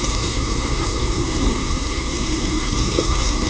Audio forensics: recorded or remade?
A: remade